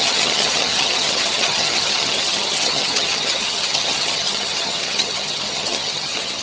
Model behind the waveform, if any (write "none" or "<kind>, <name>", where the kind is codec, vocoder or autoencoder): vocoder, HiFi-GAN